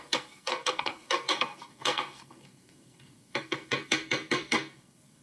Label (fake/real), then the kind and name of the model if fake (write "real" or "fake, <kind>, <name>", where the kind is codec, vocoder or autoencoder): fake, codec, SNAC